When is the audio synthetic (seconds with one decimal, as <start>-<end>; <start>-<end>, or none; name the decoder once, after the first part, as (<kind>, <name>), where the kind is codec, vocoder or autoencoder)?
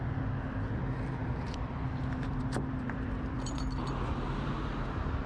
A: 1.2-4.4 (vocoder, BigVGAN v2)